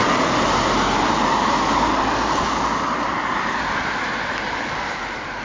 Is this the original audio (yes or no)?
yes